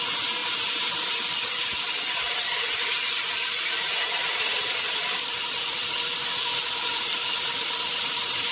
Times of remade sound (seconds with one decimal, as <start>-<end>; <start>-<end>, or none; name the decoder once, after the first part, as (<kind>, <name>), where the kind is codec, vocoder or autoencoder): none